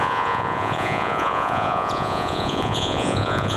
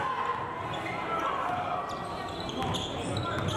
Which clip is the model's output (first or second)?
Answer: first